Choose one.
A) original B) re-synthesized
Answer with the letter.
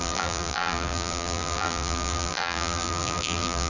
B